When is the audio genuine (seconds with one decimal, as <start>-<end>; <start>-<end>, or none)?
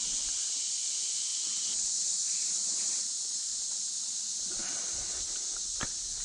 1.3-2.2; 3.5-4.0